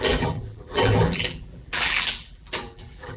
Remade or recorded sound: remade